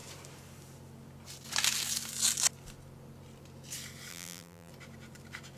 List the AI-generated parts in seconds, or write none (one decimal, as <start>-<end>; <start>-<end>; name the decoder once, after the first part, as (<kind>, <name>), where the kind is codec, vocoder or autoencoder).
4.1-4.7 (vocoder, BigVGAN v2)